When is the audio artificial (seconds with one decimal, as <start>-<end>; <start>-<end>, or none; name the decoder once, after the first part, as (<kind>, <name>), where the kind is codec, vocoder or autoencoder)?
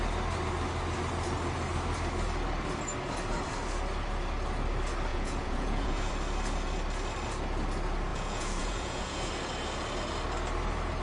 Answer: 5.1-6.1 (vocoder, Vocos); 8.1-9.3